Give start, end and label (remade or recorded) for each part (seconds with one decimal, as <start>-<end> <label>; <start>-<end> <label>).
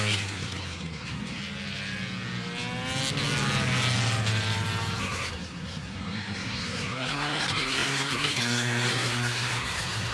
0.0-1.4 remade; 1.4-5.0 recorded; 5.0-10.1 remade